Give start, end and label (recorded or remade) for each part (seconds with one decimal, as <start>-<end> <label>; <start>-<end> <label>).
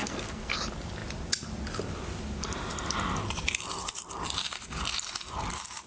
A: 0.0-0.6 remade; 0.6-5.9 recorded